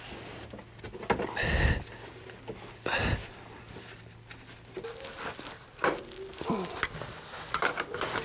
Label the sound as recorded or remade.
recorded